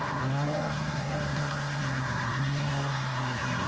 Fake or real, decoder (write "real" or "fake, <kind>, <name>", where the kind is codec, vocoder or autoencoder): fake, codec, SNAC